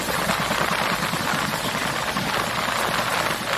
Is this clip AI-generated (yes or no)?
no